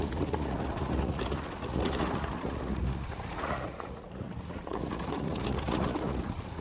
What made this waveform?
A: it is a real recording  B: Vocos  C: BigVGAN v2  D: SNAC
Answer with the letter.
B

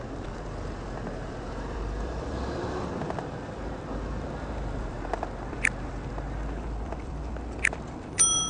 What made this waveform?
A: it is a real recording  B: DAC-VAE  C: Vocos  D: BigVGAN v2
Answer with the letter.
D